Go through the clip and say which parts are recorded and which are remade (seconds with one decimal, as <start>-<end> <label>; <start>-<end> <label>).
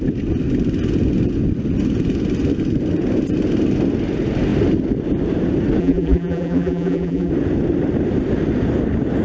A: 0.0-5.8 recorded; 5.8-7.3 remade; 7.3-9.2 recorded